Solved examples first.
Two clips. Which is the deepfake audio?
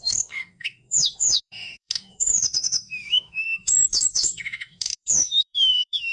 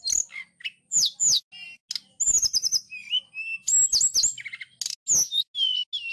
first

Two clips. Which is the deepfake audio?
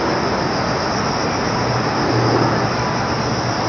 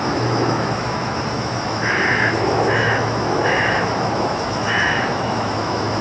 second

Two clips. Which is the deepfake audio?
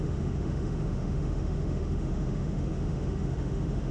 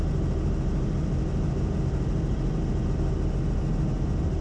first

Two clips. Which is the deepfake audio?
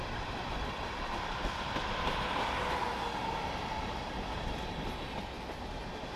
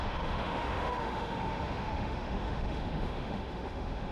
second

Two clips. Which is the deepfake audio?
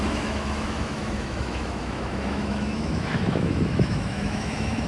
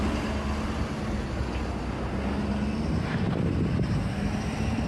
first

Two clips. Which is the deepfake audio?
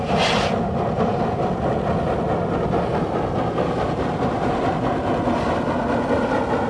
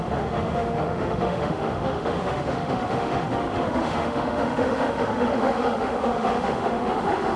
second